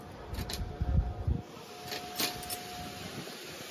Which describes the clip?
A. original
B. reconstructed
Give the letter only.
A